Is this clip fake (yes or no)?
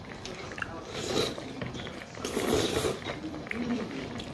yes